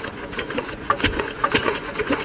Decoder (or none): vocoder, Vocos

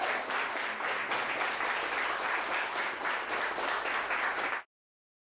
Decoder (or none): none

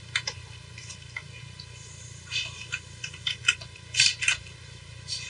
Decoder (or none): none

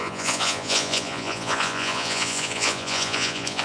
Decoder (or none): vocoder, Vocos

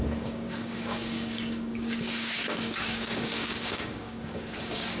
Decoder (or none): codec, DAC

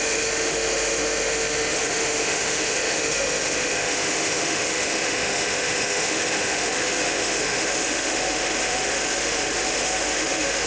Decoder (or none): autoencoder, DAC-VAE